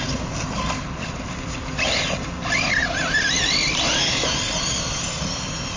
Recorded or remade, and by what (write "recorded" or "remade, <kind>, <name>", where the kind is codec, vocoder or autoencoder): recorded